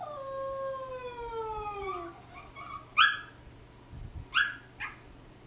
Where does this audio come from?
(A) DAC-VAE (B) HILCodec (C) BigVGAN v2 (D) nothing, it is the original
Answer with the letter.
D